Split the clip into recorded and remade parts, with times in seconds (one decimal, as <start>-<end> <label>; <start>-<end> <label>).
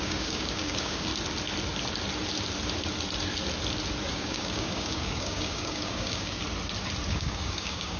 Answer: 0.0-1.1 remade; 1.1-4.1 recorded; 4.1-6.4 remade; 6.4-7.1 recorded; 7.1-8.0 remade